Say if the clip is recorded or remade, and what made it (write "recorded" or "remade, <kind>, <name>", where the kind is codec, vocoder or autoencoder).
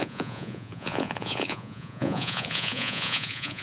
remade, vocoder, Vocos